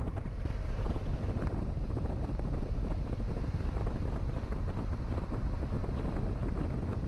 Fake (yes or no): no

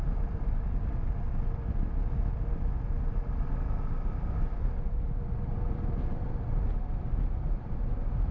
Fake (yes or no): no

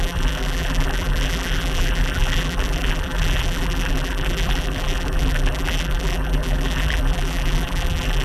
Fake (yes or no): yes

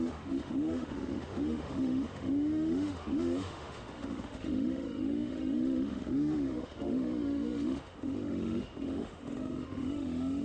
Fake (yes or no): yes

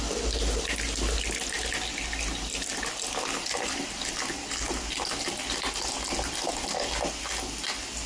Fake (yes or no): no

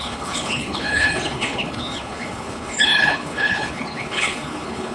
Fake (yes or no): yes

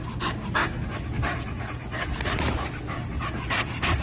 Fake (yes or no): no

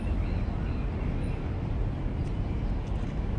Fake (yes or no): no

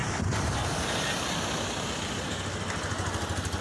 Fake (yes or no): no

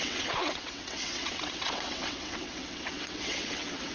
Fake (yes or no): yes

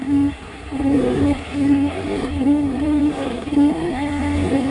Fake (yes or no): yes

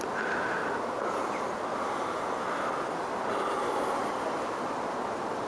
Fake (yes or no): no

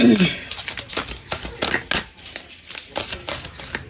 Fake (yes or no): no